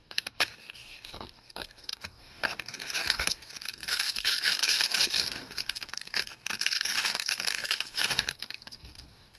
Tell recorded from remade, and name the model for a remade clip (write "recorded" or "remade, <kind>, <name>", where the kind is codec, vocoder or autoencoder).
remade, codec, DAC